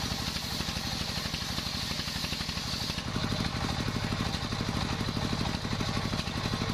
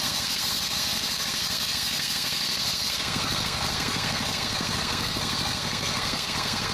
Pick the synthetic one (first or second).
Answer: second